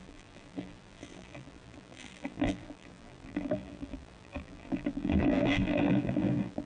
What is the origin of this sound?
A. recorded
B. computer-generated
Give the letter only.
B